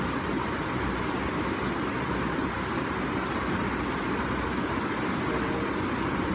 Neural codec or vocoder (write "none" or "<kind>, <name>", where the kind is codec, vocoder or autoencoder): none